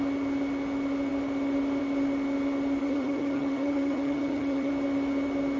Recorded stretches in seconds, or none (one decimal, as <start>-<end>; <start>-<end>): 0.0-2.8; 4.7-5.6